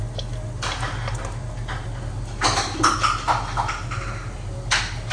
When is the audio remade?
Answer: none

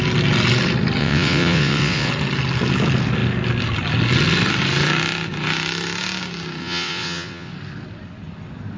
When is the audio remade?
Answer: 1.0-2.1; 6.6-7.5